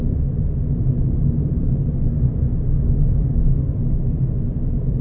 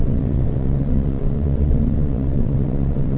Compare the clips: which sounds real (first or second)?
first